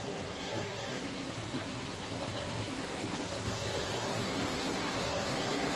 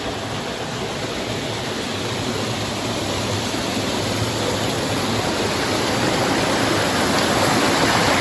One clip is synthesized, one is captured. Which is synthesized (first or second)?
first